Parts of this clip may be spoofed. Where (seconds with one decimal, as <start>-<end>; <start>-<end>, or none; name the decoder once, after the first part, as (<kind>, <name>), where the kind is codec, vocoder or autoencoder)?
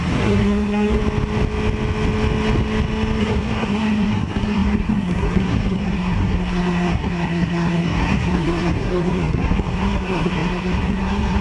0.0-1.0 (codec, SNAC); 3.2-11.4